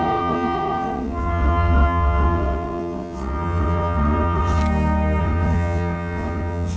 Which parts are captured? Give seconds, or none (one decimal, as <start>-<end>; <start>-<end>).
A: 4.6-5.2